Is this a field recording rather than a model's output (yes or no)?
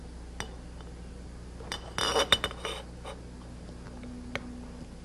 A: yes